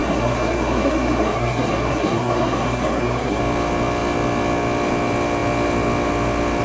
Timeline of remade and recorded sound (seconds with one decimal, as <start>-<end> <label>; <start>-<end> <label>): 0.0-3.4 remade; 3.4-6.6 recorded